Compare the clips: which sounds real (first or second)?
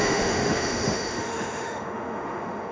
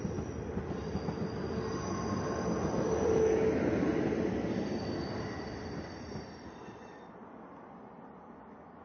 second